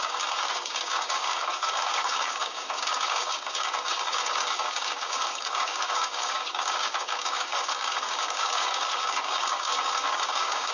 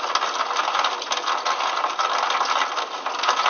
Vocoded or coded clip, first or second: first